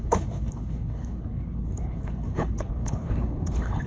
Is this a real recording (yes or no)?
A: no